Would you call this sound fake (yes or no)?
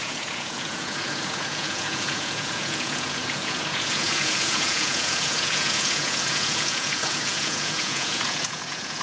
yes